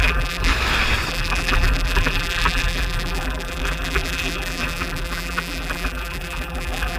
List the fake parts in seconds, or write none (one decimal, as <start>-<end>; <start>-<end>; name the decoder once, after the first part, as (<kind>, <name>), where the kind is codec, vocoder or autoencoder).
0.0-0.5 (vocoder, BigVGAN v2); 1.1-7.0